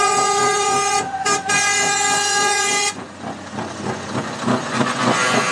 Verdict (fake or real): fake